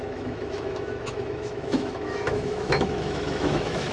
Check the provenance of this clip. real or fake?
fake